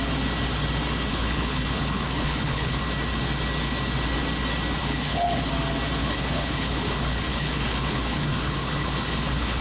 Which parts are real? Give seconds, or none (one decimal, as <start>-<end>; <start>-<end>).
0.0-1.1; 2.8-4.8; 5.5-6.0